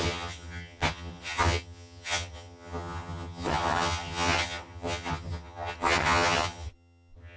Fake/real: fake